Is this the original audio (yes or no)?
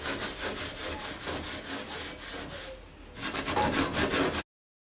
yes